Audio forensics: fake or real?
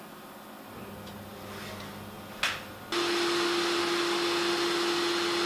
real